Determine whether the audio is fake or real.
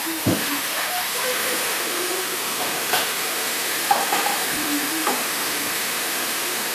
fake